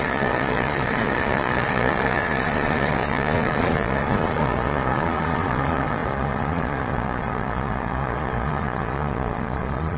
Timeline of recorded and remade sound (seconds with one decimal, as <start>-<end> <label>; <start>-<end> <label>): 0.0-10.0 remade